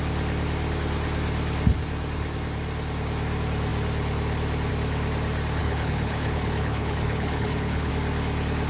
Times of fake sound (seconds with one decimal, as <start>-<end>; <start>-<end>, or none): 5.6-7.9